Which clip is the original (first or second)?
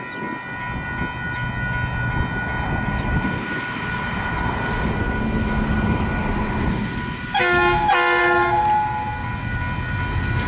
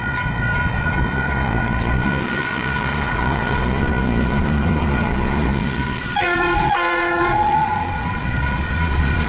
first